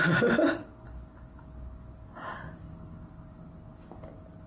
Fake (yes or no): no